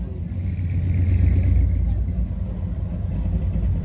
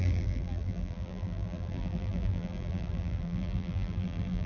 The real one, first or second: first